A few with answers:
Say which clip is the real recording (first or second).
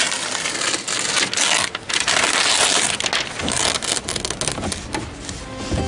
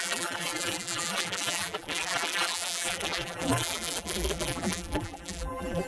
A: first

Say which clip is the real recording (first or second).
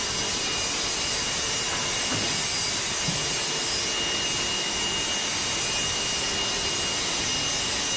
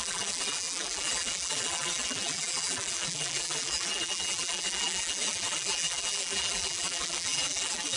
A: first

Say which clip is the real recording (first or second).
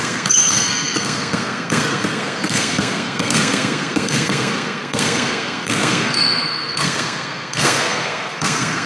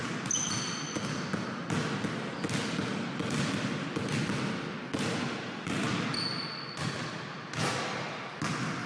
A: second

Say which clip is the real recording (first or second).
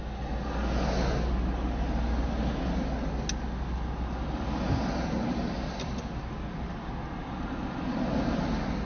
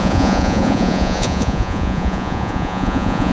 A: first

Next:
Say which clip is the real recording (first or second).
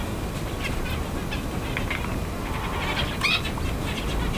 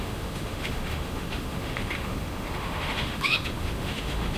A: first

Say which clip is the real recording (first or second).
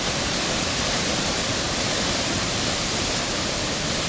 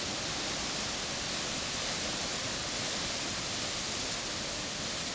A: second